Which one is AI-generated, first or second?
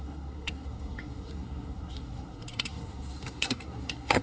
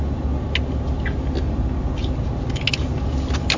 first